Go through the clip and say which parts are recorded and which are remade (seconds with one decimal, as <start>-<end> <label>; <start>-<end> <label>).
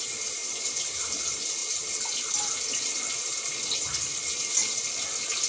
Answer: 0.0-5.5 recorded